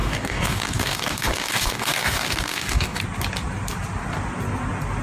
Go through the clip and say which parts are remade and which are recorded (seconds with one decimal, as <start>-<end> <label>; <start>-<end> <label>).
0.0-3.0 remade; 3.0-5.0 recorded